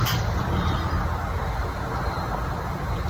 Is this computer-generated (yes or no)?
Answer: no